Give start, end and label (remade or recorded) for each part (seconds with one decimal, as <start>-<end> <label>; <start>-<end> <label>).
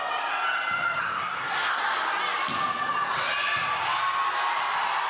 0.0-1.0 recorded; 1.0-1.8 remade; 1.8-5.1 recorded